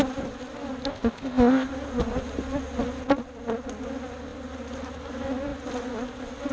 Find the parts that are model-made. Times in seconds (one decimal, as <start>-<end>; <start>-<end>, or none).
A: 0.9-1.7